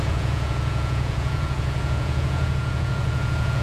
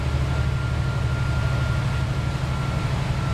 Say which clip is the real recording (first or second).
second